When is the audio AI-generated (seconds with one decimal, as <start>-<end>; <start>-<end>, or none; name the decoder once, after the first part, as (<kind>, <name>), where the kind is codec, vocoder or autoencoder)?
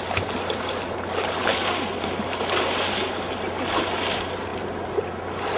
none